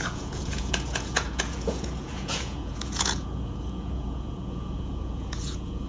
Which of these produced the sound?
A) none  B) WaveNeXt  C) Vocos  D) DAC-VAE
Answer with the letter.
C